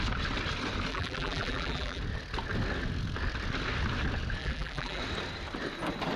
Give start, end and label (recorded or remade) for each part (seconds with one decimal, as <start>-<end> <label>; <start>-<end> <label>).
0.0-0.9 recorded; 0.9-2.0 remade; 2.0-4.4 recorded; 4.4-5.0 remade; 5.0-6.2 recorded